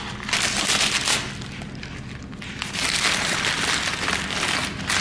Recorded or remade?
recorded